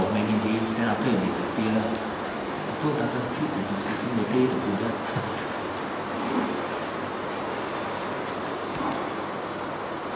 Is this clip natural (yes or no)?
yes